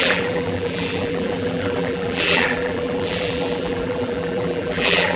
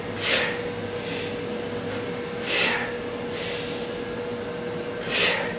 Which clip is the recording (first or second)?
second